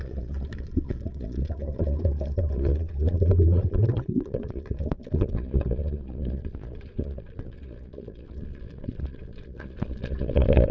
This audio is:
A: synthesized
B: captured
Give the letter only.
A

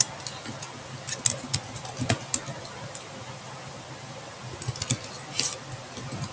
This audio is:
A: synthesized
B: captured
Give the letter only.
B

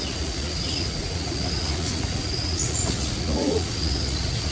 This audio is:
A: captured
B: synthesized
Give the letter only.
B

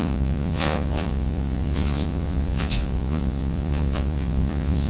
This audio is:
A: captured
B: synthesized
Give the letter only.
B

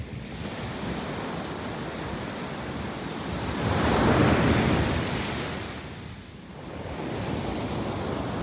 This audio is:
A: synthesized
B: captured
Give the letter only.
B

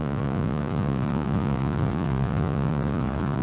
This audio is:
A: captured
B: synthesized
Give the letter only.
B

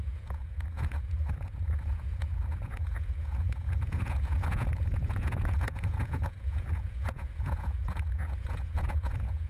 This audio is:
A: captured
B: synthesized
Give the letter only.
B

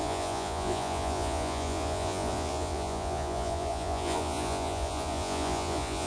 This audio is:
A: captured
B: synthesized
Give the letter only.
B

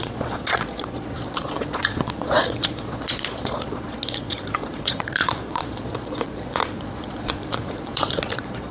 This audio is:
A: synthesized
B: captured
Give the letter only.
A